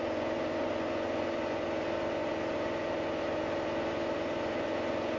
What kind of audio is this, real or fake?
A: fake